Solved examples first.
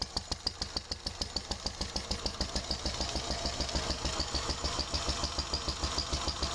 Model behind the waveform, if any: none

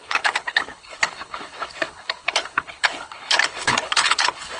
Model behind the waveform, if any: codec, HILCodec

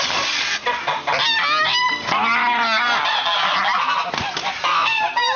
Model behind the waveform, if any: none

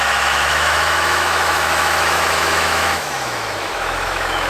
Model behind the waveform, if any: autoencoder, DAC-VAE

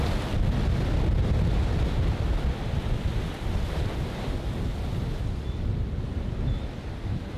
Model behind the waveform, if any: none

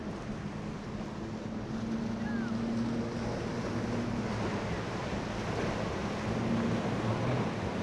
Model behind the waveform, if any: none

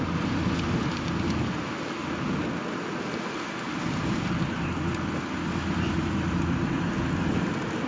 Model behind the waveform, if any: none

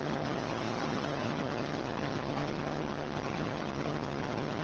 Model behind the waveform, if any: vocoder, HiFi-GAN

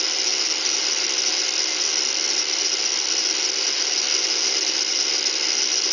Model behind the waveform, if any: none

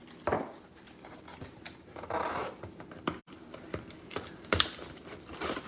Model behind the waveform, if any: vocoder, BigVGAN v2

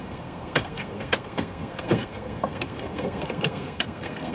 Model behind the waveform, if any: codec, SNAC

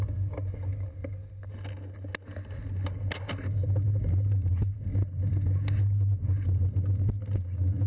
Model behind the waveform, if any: none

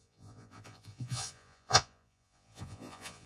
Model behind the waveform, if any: vocoder, Vocos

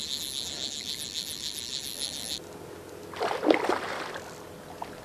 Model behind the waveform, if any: none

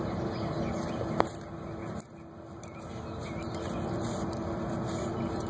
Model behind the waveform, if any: none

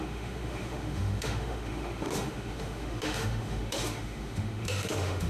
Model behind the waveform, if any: autoencoder, DAC-VAE